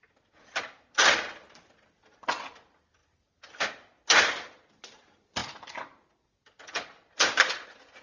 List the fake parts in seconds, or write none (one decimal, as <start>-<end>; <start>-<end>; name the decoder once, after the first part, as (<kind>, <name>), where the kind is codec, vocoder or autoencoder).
none